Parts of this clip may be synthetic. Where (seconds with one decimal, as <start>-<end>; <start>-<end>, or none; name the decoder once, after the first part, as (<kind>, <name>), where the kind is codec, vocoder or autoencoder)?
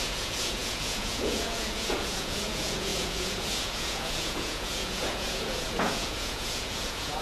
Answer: 0.0-7.2 (vocoder, Vocos)